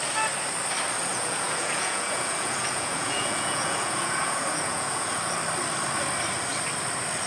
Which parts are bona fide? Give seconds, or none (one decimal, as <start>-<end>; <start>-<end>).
0.0-1.1; 5.2-7.3